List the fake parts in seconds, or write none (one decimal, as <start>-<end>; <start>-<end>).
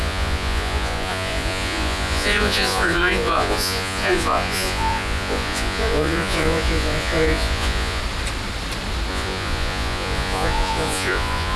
0.0-8.0; 9.1-11.6